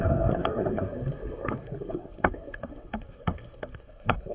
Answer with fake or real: fake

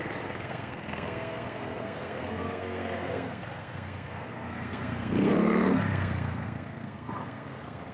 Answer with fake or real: fake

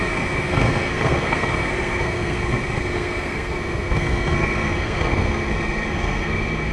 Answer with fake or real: fake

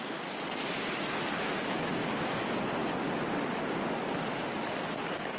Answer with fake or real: real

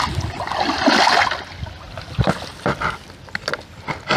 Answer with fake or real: real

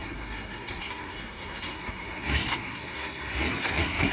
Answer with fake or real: fake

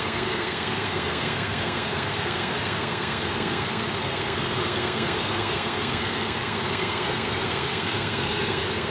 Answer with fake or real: fake